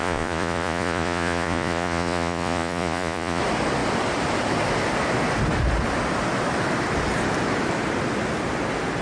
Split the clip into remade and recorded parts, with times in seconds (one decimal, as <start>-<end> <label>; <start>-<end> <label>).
0.0-3.4 remade; 3.4-9.0 recorded